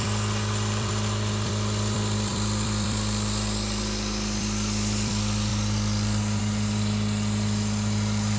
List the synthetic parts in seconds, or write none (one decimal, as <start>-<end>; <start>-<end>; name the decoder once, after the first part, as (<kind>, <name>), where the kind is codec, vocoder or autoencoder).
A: 0.0-8.4 (vocoder, BigVGAN v2)